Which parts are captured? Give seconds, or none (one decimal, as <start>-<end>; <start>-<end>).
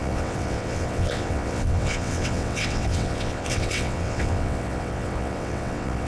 none